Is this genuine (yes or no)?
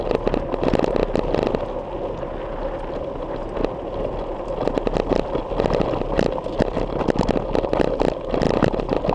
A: yes